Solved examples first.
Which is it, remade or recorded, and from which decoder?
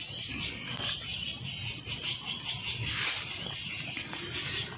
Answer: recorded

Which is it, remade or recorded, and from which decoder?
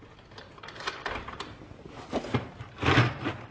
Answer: recorded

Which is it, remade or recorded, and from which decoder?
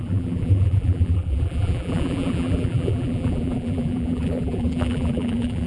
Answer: remade, vocoder, BigVGAN v2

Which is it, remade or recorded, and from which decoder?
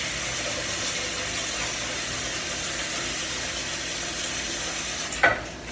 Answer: recorded